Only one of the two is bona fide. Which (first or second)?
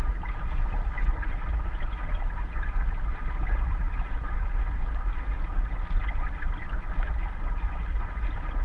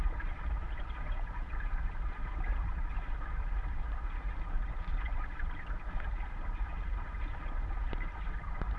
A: first